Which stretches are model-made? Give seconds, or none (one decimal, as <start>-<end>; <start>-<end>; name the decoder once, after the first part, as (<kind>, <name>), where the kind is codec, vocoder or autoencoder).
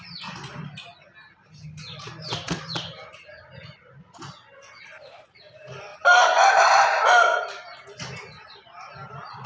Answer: none